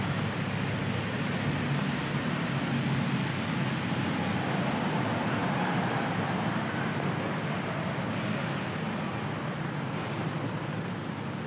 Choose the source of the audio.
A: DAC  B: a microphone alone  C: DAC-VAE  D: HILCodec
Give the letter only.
B